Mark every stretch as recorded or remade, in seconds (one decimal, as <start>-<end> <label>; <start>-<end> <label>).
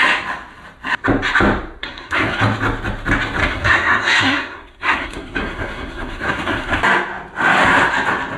0.0-1.8 recorded; 1.8-2.4 remade; 2.4-3.4 recorded; 3.4-6.8 remade; 6.8-8.4 recorded